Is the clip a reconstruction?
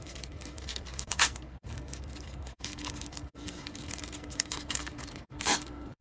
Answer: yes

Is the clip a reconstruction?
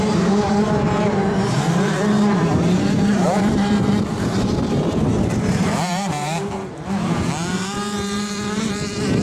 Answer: yes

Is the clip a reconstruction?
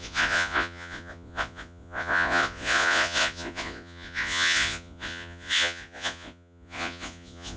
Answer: yes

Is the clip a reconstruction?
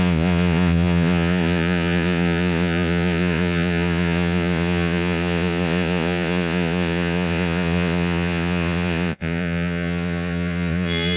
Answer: yes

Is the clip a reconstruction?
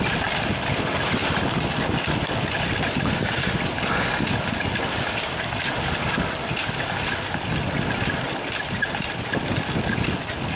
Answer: no